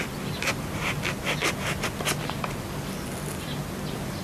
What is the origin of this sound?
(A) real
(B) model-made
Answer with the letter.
A